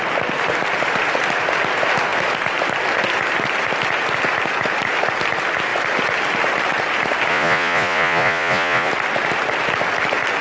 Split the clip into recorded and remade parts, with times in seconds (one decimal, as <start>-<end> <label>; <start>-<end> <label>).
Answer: 0.0-7.3 recorded; 7.3-8.9 remade; 8.9-10.4 recorded